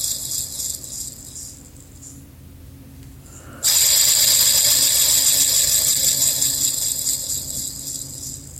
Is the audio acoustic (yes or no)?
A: yes